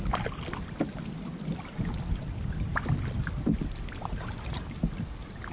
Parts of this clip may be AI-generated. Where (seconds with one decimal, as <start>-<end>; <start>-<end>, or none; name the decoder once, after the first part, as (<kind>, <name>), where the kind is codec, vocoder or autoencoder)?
none